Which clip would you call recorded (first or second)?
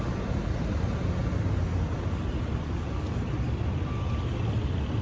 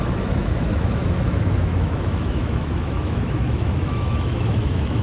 first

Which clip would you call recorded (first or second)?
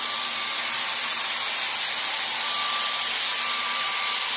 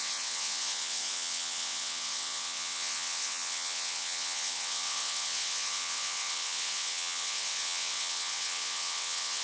first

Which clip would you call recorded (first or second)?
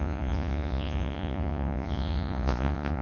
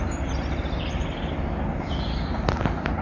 second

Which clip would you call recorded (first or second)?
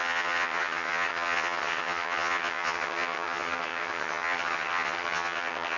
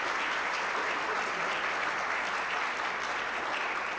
second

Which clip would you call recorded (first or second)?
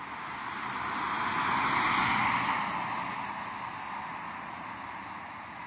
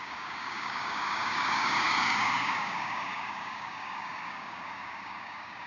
first